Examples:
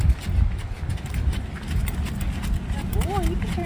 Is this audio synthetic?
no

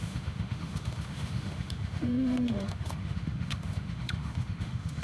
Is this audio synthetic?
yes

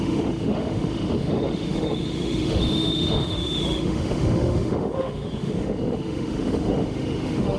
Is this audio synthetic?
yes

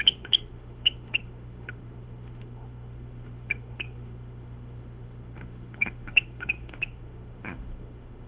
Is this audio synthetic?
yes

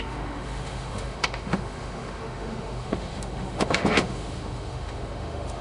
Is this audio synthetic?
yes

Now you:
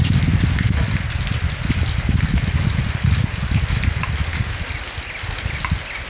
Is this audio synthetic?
no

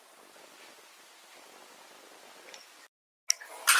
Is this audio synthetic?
no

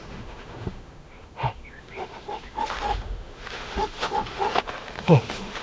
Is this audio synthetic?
yes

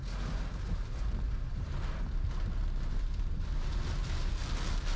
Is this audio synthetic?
no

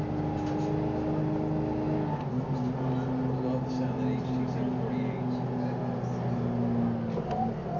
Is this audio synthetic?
no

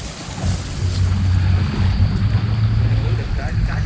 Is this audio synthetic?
no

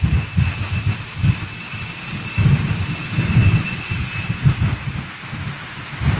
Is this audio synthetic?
no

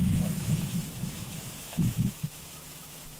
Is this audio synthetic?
yes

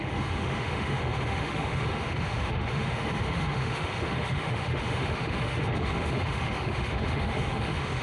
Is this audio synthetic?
yes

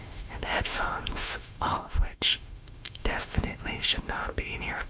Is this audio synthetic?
yes